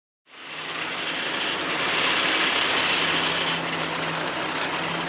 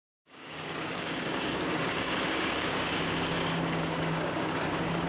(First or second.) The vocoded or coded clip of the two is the second